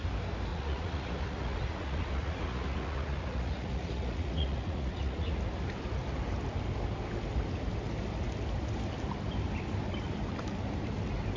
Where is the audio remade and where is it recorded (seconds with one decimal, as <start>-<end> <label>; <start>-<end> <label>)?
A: 0.0-0.5 recorded; 0.5-5.4 remade; 5.4-11.4 recorded